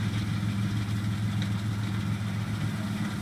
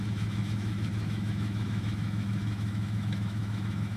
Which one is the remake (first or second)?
second